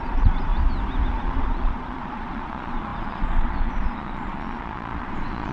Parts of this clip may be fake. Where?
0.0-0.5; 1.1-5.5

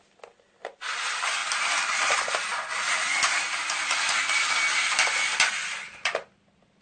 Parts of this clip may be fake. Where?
none

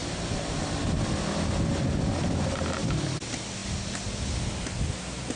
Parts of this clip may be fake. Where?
none

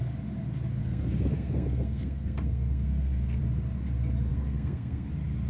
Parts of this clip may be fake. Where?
0.8-3.4; 4.3-5.1